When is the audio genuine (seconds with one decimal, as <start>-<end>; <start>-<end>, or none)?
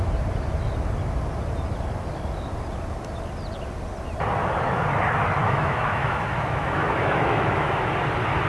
0.0-5.4; 7.9-8.5